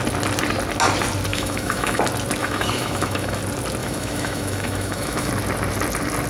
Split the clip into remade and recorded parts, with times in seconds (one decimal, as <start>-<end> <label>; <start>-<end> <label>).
0.0-1.3 recorded; 1.3-2.0 remade; 2.0-2.4 recorded; 2.4-3.4 remade; 3.4-3.8 recorded; 3.8-5.3 remade; 5.3-6.3 recorded